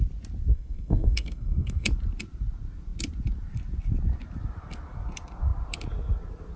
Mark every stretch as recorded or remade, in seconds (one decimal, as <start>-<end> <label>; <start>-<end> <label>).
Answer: 0.0-0.5 recorded; 0.5-1.9 remade; 1.9-6.6 recorded